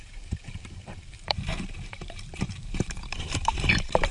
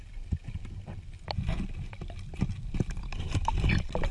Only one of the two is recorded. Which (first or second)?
second